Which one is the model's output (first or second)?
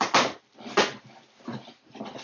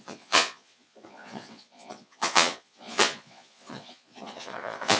second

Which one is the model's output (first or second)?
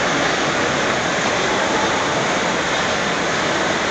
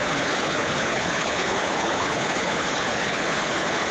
second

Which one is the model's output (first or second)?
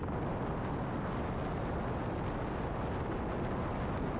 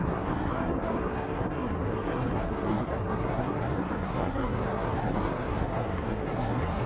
second